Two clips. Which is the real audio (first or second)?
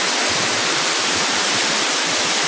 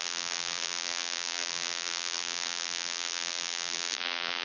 first